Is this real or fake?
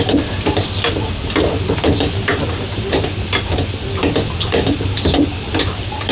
real